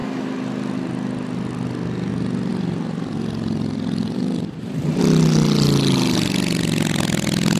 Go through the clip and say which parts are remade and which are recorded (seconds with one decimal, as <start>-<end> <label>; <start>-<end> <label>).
0.0-2.5 recorded; 2.5-5.0 remade; 5.0-7.6 recorded